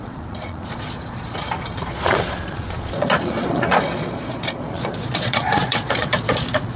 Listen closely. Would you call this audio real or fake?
fake